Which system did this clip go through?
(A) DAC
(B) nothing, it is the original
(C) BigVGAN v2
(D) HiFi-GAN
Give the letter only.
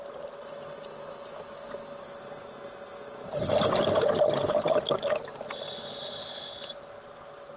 B